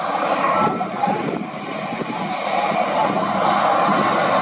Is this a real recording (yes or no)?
yes